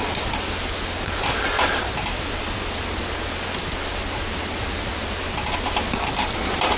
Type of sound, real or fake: real